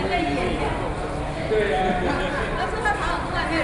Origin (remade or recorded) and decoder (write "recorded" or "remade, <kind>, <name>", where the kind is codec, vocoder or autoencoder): recorded